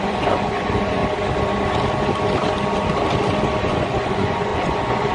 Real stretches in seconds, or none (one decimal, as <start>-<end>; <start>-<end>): 1.0-3.6